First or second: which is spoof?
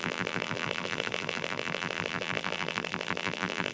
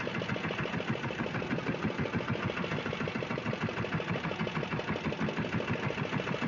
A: first